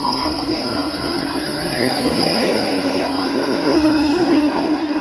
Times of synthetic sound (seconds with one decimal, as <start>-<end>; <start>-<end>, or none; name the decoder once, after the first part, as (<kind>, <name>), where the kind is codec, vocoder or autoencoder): 0.0-5.0 (codec, SNAC)

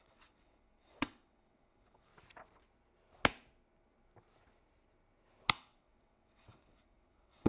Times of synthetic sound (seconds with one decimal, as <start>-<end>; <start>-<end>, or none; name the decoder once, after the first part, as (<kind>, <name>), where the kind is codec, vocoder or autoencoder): 0.0-2.1 (vocoder, WaveNeXt); 5.5-7.5